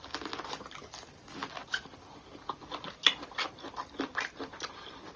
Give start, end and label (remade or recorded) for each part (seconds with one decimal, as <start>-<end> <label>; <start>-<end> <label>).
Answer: 0.0-5.2 recorded